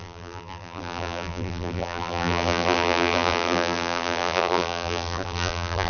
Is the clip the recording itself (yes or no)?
no